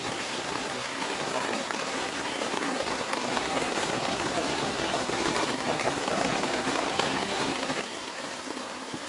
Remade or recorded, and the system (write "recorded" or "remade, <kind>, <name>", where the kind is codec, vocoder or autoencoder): remade, codec, SNAC